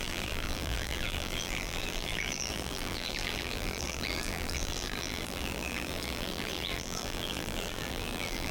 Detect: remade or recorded remade